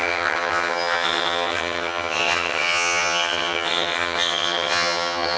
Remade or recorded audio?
remade